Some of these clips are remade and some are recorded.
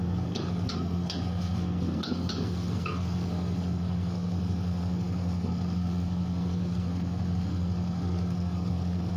remade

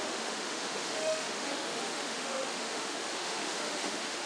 remade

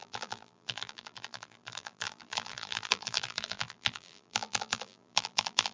remade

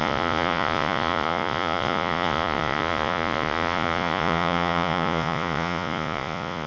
remade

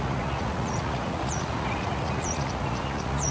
remade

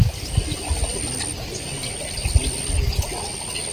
recorded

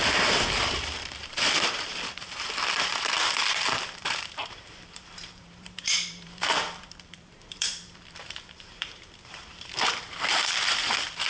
remade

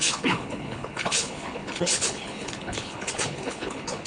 remade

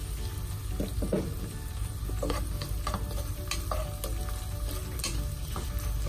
recorded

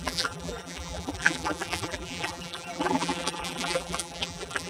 remade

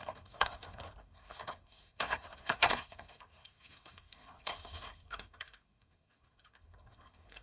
remade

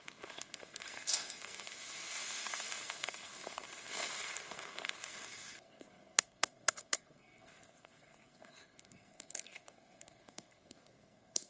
remade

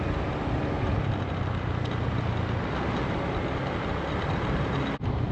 recorded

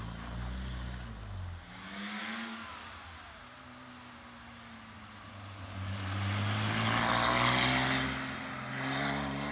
recorded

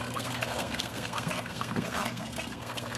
remade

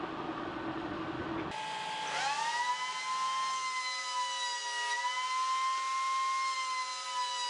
recorded